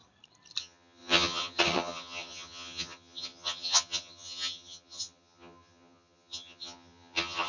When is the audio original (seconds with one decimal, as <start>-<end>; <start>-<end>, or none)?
0.0-0.6